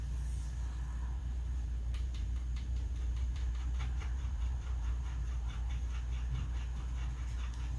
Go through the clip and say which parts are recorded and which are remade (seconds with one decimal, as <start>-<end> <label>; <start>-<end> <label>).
0.0-1.2 recorded; 1.2-5.7 remade; 5.7-7.8 recorded